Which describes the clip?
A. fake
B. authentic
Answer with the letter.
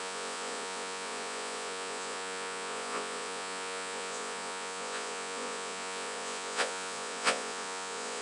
A